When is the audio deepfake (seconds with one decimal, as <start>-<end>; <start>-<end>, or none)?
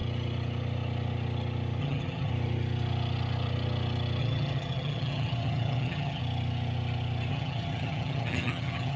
1.8-2.3; 4.2-6.2; 7.3-9.0